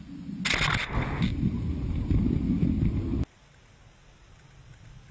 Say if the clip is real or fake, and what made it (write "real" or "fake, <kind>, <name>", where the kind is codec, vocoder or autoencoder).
real